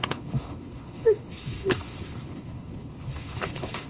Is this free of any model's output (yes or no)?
no